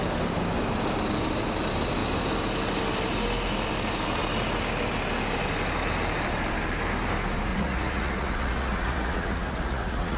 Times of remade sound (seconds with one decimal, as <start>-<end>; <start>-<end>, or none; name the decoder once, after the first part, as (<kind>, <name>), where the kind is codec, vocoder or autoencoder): 7.5-10.2 (vocoder, Vocos)